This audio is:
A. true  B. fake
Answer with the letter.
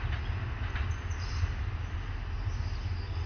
A